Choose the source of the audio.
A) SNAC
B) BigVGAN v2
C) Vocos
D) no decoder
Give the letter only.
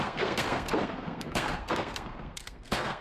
A